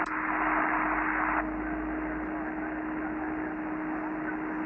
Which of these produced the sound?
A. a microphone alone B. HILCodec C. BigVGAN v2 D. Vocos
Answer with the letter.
A